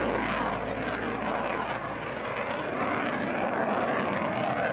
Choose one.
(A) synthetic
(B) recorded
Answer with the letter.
B